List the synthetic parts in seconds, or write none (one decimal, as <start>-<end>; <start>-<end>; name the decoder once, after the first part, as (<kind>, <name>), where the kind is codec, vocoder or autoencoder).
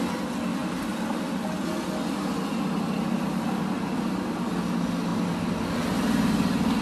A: none